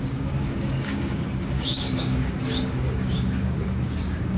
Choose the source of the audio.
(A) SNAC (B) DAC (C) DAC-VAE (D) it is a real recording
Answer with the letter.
B